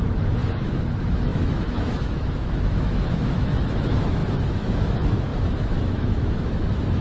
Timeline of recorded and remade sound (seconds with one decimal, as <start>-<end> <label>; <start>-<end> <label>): 0.0-7.0 remade